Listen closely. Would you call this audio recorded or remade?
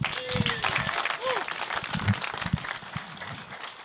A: recorded